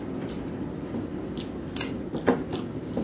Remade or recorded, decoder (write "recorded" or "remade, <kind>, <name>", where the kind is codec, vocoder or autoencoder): recorded